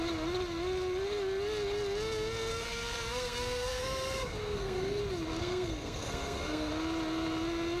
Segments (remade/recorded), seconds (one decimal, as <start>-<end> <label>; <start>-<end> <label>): 0.0-2.5 recorded; 2.5-5.0 remade; 5.0-5.4 recorded; 5.4-6.7 remade; 6.7-7.8 recorded